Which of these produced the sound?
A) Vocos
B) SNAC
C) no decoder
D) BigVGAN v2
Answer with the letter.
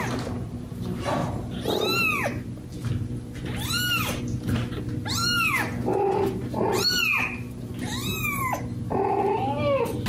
C